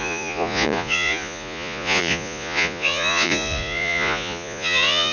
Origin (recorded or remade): remade